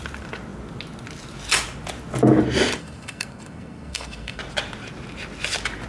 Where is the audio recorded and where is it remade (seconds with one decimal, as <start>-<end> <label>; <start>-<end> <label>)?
0.0-2.8 recorded; 2.8-4.4 remade; 4.4-5.9 recorded